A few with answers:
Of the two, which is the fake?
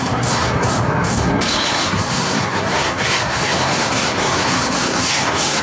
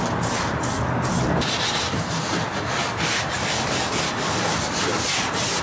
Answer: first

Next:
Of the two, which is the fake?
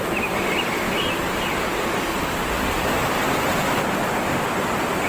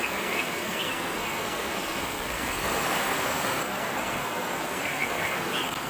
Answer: second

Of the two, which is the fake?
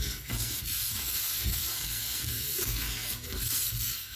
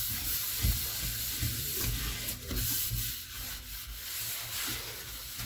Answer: first